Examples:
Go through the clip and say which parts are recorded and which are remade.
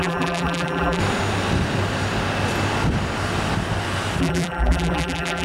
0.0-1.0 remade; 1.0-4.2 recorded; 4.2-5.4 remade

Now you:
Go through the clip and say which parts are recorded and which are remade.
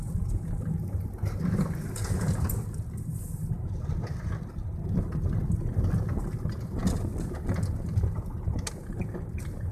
0.0-9.7 recorded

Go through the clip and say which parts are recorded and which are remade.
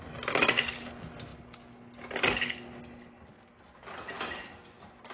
0.0-5.1 recorded